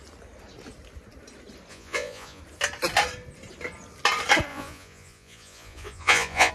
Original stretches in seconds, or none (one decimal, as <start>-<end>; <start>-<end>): 0.0-1.7; 2.4-4.5